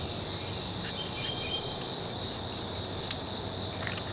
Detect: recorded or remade recorded